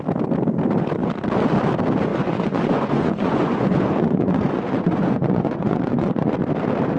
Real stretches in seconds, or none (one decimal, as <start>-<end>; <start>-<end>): 0.0-2.1; 6.3-7.0